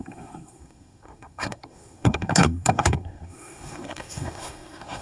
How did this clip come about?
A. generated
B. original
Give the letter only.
A